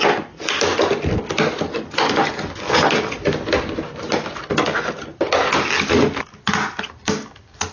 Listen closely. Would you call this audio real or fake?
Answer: real